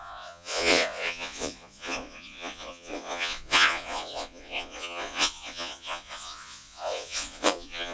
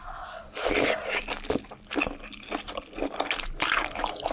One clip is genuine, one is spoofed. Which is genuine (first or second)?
second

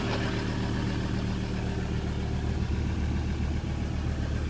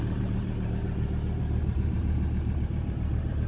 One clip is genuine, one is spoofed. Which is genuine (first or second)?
first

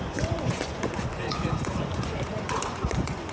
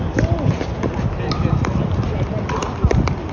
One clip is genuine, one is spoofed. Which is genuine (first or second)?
second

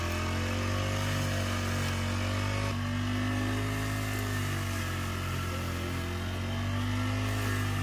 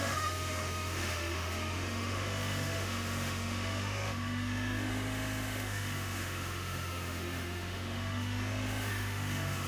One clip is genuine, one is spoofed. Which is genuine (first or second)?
first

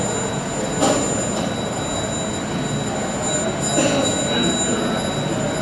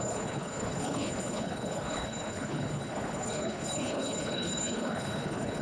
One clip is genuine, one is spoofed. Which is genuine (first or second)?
first